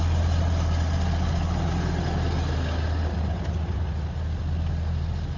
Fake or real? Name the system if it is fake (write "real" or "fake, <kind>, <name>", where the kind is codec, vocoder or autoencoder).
real